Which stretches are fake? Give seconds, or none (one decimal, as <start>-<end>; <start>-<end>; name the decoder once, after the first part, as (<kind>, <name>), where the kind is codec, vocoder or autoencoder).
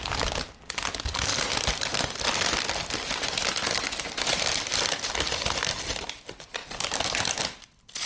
1.3-6.1 (vocoder, BigVGAN v2); 6.6-7.4